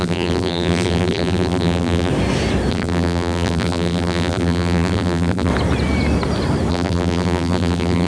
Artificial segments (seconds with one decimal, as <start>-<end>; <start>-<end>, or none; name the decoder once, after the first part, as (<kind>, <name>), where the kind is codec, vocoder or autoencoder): 0.0-2.1 (vocoder, BigVGAN v2); 2.7-5.5; 6.7-8.1